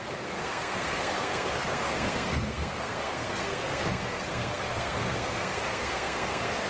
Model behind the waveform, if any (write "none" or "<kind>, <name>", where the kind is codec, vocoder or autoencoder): codec, SNAC